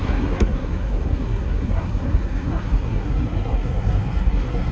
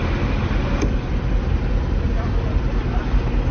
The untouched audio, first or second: second